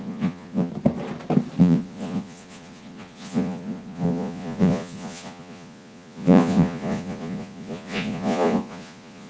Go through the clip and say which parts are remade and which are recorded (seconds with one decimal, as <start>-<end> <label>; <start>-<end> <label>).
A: 0.0-0.7 remade; 0.7-1.6 recorded; 1.6-9.3 remade